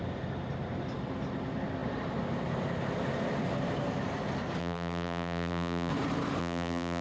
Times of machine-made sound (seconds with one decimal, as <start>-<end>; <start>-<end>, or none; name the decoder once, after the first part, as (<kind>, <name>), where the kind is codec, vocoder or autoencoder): 4.6-5.9 (vocoder, BigVGAN v2); 6.4-7.0